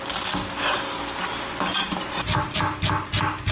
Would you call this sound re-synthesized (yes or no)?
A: no